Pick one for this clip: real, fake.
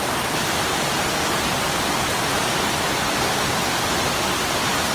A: real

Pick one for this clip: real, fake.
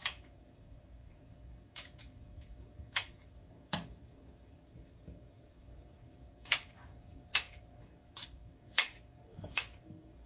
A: fake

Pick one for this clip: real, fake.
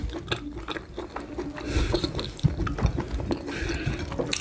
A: real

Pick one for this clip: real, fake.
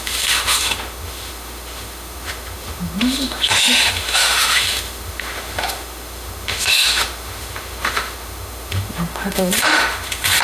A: fake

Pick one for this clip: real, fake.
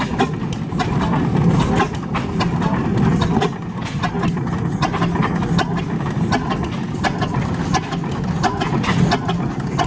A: real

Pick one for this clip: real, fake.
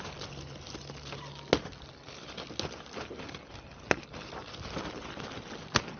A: real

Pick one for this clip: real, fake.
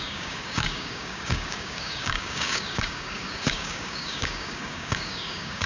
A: fake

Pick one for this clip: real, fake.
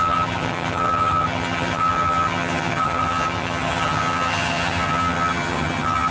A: fake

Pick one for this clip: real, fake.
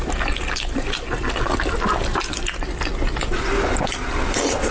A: real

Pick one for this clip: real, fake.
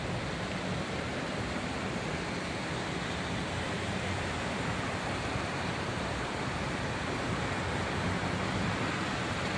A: fake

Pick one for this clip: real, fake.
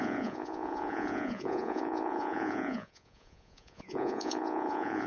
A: fake